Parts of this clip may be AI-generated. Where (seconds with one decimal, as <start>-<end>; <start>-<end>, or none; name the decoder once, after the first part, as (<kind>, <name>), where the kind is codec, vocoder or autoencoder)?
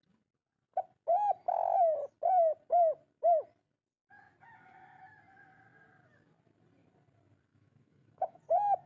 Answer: 7.5-8.4 (autoencoder, DAC-VAE)